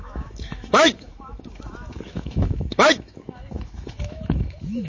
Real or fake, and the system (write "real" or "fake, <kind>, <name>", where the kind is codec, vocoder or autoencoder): fake, autoencoder, DAC-VAE